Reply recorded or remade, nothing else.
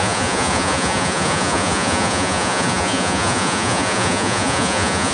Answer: remade